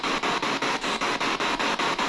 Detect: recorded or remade recorded